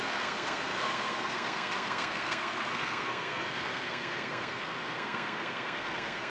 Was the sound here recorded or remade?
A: remade